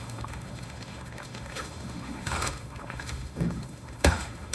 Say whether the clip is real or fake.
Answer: fake